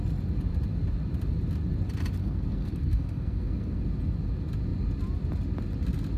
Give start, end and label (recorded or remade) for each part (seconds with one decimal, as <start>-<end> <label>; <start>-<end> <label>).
0.0-2.2 recorded; 2.2-3.8 remade; 3.8-6.2 recorded